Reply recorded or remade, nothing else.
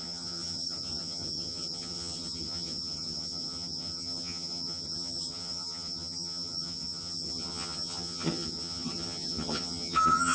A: remade